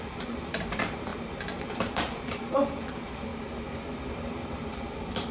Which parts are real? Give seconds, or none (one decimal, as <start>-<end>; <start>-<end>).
3.3-4.1